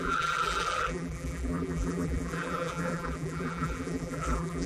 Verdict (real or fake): fake